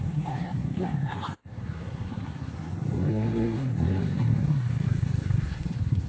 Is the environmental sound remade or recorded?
remade